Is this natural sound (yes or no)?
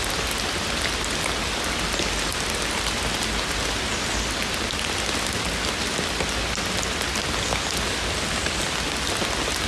yes